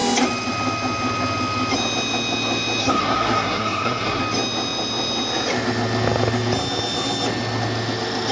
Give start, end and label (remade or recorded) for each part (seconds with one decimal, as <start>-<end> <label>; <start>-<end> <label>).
0.0-2.8 recorded; 2.8-4.2 remade; 4.2-8.3 recorded